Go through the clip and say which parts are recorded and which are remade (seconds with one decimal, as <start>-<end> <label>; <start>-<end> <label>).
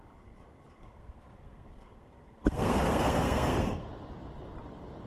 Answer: 0.0-0.8 recorded; 0.8-3.9 remade; 3.9-5.1 recorded